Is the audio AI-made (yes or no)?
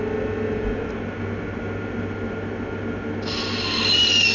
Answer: no